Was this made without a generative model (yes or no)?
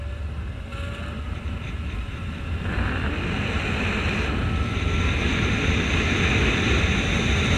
yes